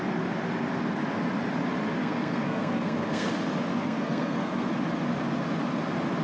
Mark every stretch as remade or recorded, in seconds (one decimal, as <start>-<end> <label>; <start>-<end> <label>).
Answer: 0.0-2.0 recorded; 2.0-3.3 remade; 3.3-3.7 recorded; 3.7-4.7 remade; 4.7-6.2 recorded